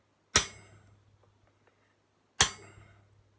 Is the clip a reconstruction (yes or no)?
no